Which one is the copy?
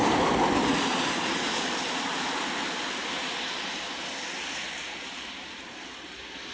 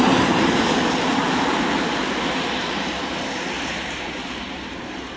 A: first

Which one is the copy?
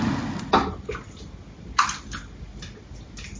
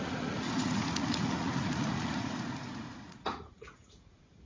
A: second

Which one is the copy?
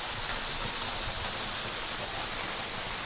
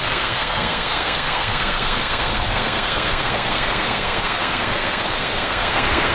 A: second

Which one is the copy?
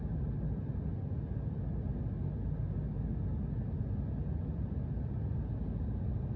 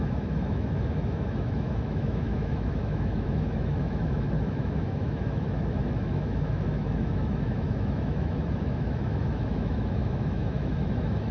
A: second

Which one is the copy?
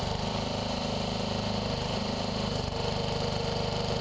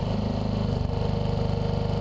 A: first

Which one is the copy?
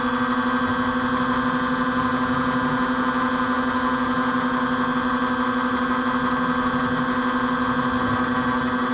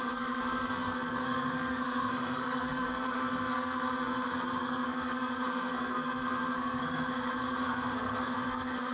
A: second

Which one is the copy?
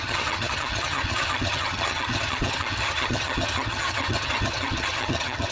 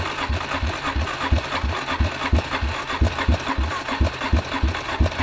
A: first